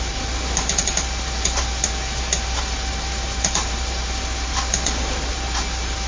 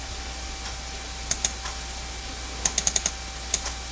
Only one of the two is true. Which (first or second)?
second